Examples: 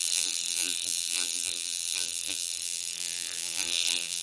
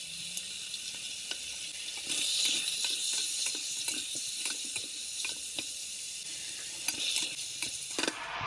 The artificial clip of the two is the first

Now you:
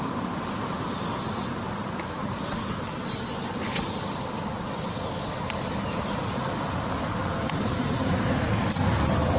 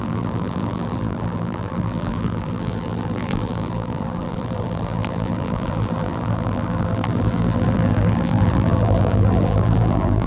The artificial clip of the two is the second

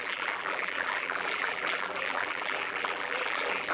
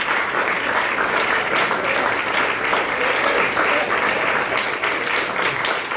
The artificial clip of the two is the first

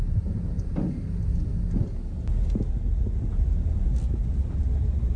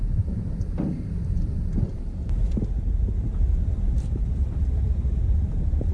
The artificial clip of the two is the second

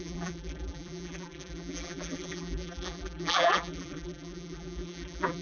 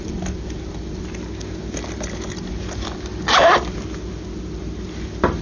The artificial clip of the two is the first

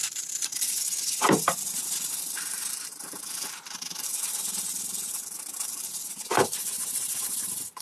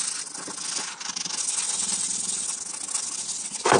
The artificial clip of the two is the first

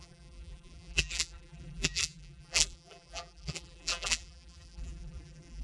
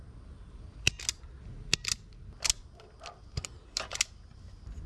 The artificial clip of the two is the first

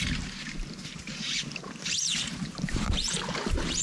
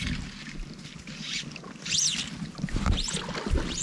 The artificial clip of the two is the first